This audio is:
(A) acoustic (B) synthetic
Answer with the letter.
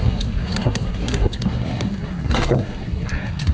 B